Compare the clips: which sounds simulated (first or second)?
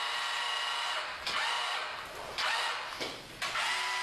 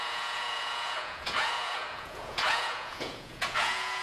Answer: second